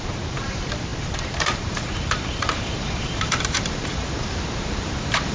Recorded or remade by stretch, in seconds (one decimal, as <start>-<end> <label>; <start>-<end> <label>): 0.0-5.3 remade